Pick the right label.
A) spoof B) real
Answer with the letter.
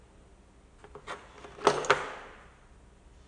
B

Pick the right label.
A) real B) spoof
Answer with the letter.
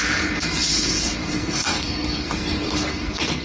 B